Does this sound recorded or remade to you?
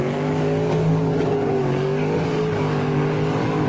remade